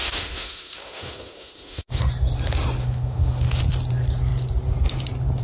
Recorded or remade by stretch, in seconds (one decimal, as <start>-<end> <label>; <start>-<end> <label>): 0.0-2.0 remade; 2.0-2.8 recorded; 2.8-3.6 remade; 3.6-5.4 recorded